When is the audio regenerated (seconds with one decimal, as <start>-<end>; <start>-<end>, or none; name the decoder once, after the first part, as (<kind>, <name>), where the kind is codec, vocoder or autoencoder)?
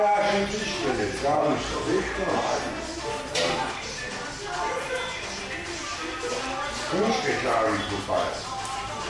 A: none